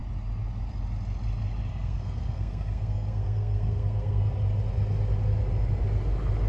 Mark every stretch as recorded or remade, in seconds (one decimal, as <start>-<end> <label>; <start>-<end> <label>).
0.0-1.7 recorded; 1.7-4.3 remade; 4.3-6.5 recorded